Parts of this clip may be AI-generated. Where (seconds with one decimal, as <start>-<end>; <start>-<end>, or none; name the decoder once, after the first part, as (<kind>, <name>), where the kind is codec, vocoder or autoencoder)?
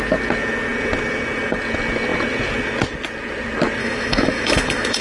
3.8-5.0 (autoencoder, DAC-VAE)